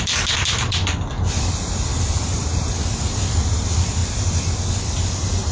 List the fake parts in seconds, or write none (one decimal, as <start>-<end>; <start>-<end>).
0.0-1.9; 2.7-4.0; 5.1-5.5

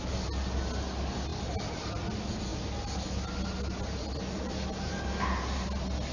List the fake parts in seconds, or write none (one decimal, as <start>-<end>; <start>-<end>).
1.3-1.9

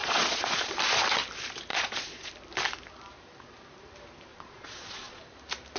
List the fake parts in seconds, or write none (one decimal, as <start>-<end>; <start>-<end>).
0.0-0.8; 1.7-2.3; 4.3-5.2